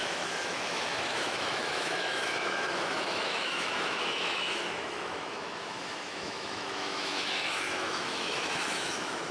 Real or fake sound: fake